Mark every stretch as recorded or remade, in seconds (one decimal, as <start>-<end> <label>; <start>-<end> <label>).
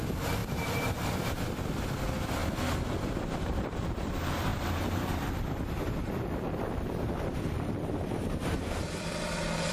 0.0-2.4 remade; 2.4-3.1 recorded; 3.1-9.7 remade